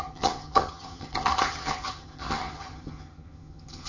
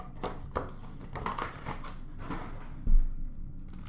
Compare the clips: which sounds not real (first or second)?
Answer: first